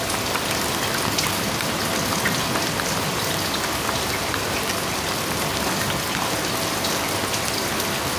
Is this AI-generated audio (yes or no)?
no